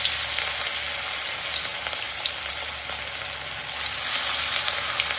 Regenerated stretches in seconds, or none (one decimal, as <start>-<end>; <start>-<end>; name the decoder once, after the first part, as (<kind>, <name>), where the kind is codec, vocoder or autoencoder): none